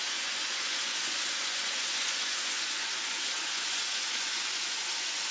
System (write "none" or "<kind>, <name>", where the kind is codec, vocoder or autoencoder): vocoder, Vocos